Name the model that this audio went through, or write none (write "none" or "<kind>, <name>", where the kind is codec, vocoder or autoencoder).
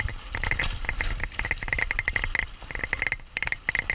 none